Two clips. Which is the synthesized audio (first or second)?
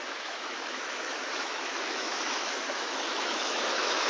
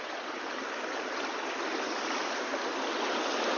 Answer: first